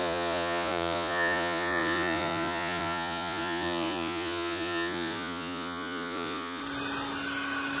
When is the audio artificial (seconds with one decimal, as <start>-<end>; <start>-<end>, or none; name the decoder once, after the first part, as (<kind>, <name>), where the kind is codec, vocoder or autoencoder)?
0.0-6.6 (vocoder, Vocos)